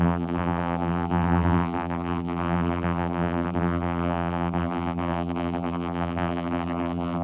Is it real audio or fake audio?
fake